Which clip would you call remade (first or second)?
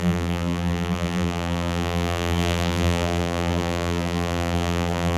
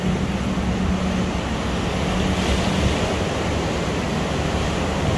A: first